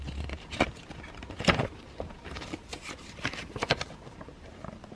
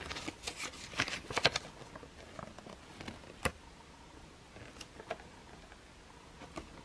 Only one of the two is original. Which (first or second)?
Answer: second